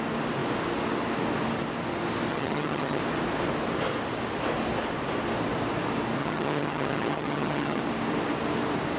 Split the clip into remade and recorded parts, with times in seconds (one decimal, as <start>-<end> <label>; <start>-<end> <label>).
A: 0.0-2.3 recorded; 2.3-3.0 remade; 3.0-6.2 recorded; 6.2-7.8 remade; 7.8-9.0 recorded